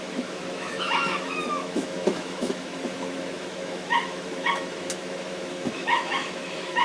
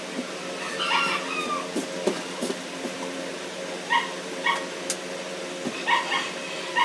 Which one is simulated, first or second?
first